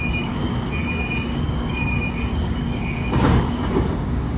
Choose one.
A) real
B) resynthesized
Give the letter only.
B